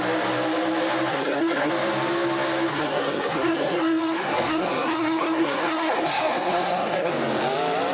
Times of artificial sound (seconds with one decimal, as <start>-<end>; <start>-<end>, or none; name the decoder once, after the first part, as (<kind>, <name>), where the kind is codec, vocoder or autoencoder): 1.1-1.7 (codec, SNAC); 2.7-7.1